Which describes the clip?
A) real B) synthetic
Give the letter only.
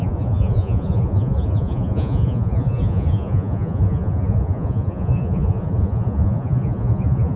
B